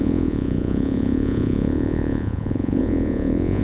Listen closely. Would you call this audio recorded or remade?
remade